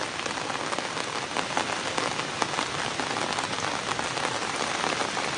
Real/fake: real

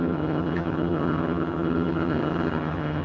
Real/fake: fake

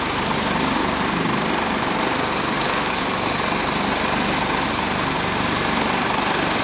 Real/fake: real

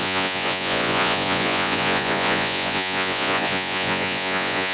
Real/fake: fake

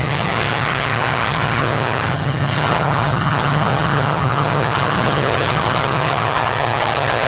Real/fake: fake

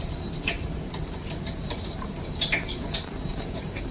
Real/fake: fake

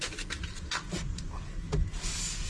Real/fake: real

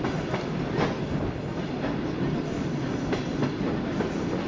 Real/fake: real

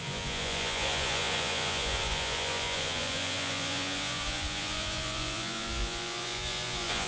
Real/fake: fake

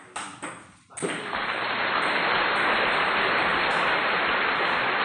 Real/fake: real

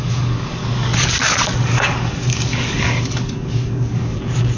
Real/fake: fake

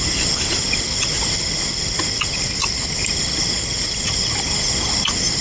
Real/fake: real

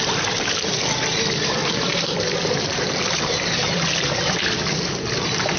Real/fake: fake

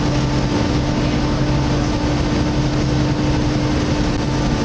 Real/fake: real